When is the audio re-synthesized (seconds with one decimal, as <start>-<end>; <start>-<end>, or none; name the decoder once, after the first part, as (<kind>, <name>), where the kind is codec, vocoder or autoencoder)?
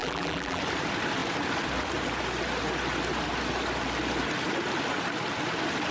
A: 0.0-0.6 (vocoder, BigVGAN v2)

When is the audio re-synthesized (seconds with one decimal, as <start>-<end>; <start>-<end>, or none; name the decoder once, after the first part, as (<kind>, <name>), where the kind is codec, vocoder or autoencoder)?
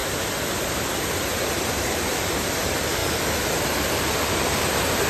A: 0.5-3.0 (vocoder, BigVGAN v2); 3.6-5.1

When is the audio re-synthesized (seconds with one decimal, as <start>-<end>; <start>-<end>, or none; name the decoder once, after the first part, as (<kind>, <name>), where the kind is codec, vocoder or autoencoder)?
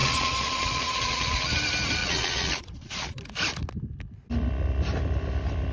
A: 0.0-1.5 (vocoder, Vocos); 2.0-3.2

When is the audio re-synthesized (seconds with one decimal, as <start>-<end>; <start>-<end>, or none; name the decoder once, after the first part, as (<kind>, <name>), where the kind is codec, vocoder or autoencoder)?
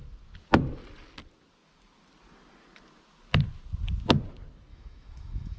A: 4.7-5.6 (autoencoder, DAC-VAE)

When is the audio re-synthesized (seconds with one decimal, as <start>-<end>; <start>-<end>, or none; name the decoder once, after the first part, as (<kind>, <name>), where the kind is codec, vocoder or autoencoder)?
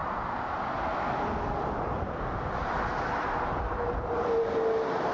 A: none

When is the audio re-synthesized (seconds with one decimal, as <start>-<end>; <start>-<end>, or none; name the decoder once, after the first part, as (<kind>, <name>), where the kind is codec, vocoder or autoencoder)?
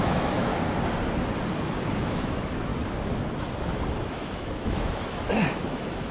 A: 0.0-0.5 (autoencoder, DAC-VAE); 1.9-2.7; 4.1-6.1